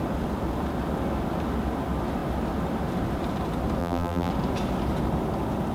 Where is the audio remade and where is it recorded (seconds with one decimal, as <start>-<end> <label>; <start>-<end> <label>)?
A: 0.0-3.8 recorded; 3.8-4.3 remade; 4.3-5.7 recorded

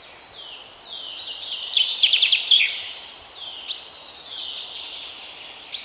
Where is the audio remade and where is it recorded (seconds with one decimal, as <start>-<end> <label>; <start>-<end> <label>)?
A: 0.0-1.8 recorded; 1.8-5.1 remade; 5.1-5.8 recorded

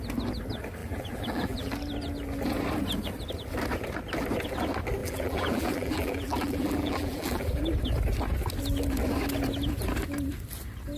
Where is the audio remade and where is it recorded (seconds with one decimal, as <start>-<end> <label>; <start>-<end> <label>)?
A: 0.0-0.8 recorded; 0.8-1.7 remade; 1.7-5.0 recorded; 5.0-7.6 remade; 7.6-11.0 recorded

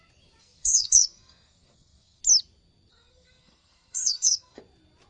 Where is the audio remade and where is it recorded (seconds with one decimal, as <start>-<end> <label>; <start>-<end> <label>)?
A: 0.0-0.4 recorded; 0.4-2.2 remade; 2.2-2.9 recorded; 2.9-4.6 remade; 4.6-5.1 recorded

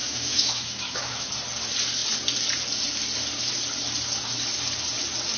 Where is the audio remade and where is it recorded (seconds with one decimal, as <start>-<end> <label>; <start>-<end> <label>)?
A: 0.0-1.3 remade; 1.3-5.4 recorded

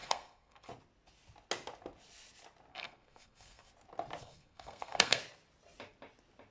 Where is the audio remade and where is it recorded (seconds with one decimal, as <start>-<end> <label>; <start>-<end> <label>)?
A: 0.0-0.7 remade; 0.7-2.7 recorded; 2.7-3.7 remade; 3.7-4.2 recorded; 4.2-5.2 remade; 5.2-6.5 recorded